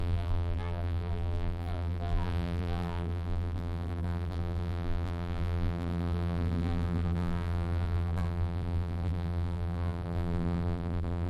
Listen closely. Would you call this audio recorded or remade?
remade